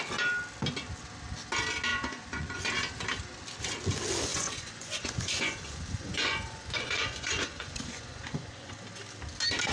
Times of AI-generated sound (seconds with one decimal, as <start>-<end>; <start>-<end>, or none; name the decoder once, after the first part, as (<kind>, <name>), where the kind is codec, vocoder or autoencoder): 1.9-2.7 (vocoder, Vocos); 4.3-8.7